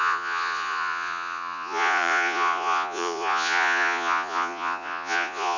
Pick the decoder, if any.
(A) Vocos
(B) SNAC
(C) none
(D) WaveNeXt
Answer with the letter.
A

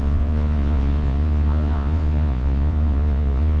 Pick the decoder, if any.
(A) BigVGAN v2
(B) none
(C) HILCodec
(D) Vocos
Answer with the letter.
D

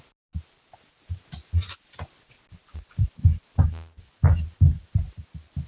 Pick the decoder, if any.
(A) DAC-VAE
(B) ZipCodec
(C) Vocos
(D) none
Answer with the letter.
D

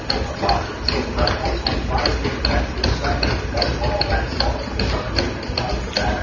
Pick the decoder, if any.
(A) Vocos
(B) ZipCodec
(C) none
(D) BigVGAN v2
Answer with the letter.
C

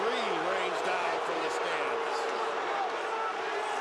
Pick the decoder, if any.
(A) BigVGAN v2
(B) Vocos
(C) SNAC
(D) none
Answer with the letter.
D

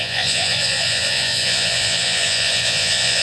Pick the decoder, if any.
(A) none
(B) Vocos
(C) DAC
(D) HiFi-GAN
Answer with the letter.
B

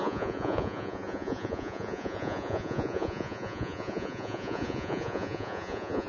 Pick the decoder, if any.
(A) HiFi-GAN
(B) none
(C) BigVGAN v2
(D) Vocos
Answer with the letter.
D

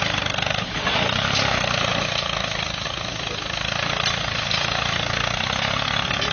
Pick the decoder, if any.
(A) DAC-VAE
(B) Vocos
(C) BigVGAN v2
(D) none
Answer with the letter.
D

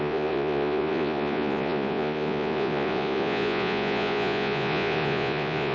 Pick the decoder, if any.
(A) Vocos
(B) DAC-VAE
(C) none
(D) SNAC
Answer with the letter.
A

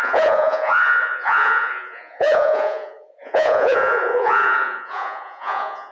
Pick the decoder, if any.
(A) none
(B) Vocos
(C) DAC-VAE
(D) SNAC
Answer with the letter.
B